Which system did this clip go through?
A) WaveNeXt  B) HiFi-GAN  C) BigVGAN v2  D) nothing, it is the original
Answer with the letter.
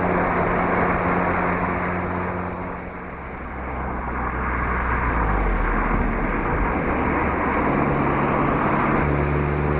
D